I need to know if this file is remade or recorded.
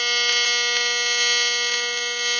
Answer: recorded